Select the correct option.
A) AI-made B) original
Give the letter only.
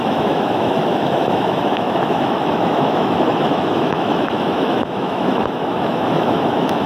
A